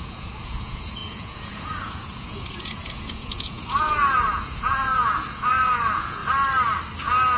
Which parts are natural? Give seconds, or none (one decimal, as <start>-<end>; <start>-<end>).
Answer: 6.2-7.4